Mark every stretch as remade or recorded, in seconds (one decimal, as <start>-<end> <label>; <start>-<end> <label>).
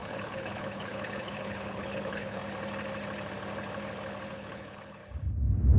0.0-2.4 remade; 2.4-4.3 recorded; 4.3-5.0 remade; 5.0-5.8 recorded